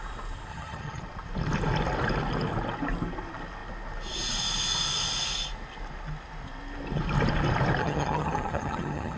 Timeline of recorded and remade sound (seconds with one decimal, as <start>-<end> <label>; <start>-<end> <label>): 0.0-0.5 recorded; 0.5-1.0 remade; 1.0-7.8 recorded; 7.8-9.2 remade